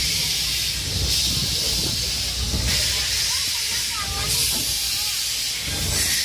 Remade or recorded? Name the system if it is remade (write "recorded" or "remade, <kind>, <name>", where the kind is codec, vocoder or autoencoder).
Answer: recorded